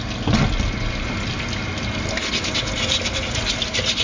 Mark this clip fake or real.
real